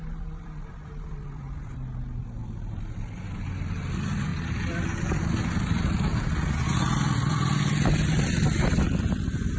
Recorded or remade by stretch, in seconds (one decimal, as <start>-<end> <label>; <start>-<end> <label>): 0.0-4.3 remade; 4.3-8.2 recorded; 8.2-9.6 remade